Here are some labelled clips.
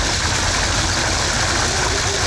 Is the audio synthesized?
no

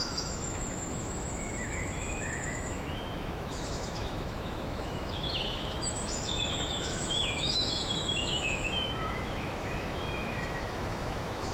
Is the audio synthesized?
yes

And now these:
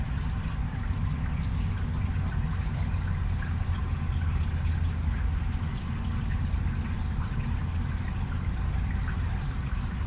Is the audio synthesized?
no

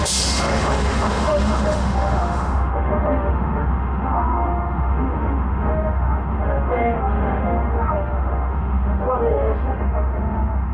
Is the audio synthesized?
yes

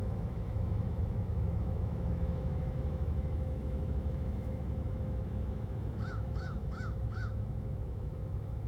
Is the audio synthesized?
yes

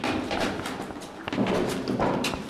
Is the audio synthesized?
no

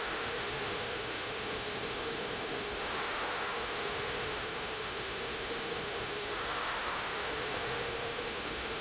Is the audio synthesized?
yes